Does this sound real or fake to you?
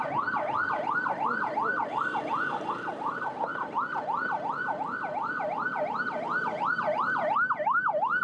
real